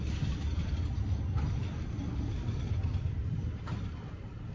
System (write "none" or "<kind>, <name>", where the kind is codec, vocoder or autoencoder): none